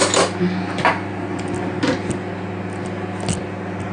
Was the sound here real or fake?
real